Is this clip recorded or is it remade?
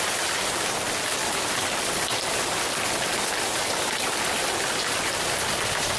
recorded